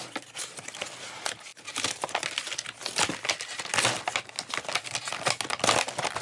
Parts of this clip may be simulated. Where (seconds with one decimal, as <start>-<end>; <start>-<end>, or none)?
1.5-2.3